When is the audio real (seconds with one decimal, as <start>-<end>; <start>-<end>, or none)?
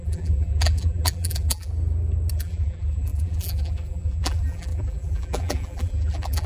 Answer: 1.7-2.3